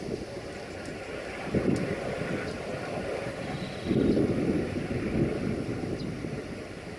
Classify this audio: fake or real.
real